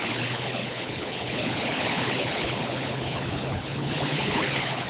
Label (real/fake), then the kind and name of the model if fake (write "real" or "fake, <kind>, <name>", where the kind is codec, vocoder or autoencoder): fake, codec, HILCodec